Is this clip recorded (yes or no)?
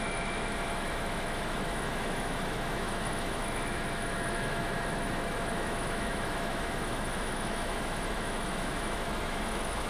no